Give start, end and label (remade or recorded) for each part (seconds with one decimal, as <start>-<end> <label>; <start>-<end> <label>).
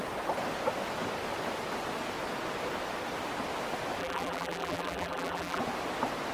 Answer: 0.0-4.0 recorded; 4.0-5.6 remade; 5.6-6.3 recorded